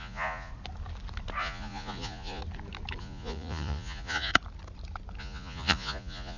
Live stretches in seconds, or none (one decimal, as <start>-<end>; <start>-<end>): 0.5-1.4; 2.4-3.0; 4.3-5.2